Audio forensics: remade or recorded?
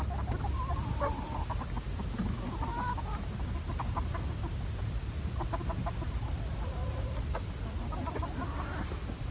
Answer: recorded